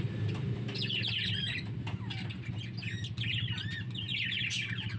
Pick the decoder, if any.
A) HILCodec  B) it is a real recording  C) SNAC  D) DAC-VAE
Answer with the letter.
B